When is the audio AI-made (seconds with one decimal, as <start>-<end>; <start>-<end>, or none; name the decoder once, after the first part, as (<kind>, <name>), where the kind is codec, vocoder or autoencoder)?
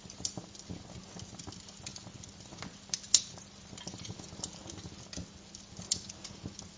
none